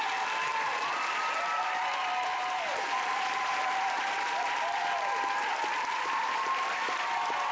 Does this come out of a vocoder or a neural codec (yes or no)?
yes